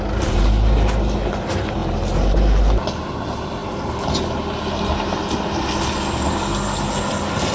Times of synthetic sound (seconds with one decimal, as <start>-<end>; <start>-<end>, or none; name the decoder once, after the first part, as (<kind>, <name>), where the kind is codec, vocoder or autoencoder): none